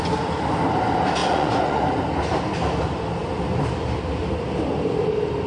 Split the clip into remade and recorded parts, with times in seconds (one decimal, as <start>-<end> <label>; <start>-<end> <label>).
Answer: 0.0-1.2 recorded; 1.2-1.8 remade; 1.8-5.5 recorded